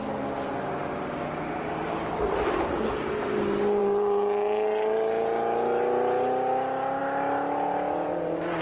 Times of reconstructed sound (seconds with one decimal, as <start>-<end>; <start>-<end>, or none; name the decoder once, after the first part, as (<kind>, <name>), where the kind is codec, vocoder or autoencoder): none